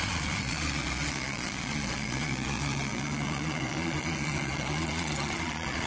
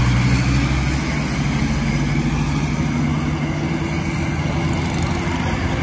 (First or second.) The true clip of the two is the second